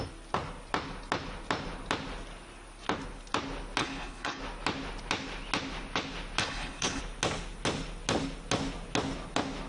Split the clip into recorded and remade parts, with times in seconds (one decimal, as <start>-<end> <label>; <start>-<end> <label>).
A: 0.0-3.8 recorded; 3.8-4.4 remade; 4.4-6.4 recorded; 6.4-7.0 remade; 7.0-9.7 recorded